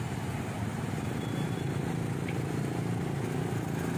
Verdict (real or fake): real